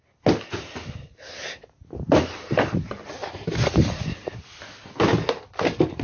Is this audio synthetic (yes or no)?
no